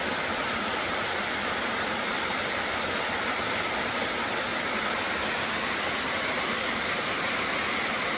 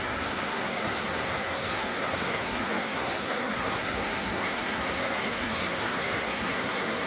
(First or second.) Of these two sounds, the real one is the first